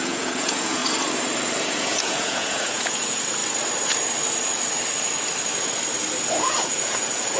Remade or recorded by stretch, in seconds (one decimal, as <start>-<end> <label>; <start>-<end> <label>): 0.0-0.8 remade; 0.8-1.7 recorded; 1.7-3.4 remade; 3.4-6.4 recorded; 6.4-7.4 remade